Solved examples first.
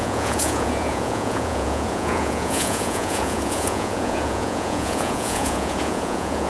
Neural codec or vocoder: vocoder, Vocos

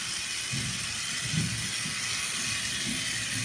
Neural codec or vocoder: none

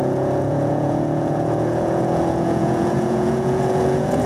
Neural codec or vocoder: vocoder, Vocos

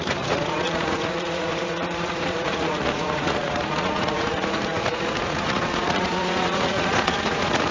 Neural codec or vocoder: vocoder, Vocos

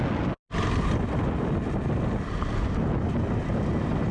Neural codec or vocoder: none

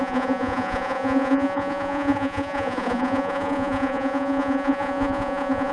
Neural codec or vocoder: vocoder, Vocos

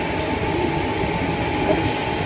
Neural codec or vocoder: none